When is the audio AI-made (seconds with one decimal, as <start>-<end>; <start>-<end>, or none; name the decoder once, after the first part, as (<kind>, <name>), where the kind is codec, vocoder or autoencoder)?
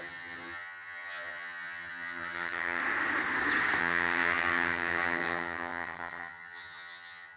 0.0-2.8 (vocoder, HiFi-GAN); 3.8-7.4